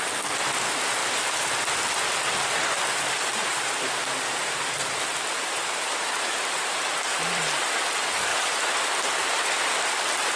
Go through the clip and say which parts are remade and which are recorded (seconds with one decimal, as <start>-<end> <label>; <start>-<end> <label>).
0.0-3.4 recorded; 3.4-7.6 remade; 7.6-8.3 recorded; 8.3-9.4 remade; 9.4-10.4 recorded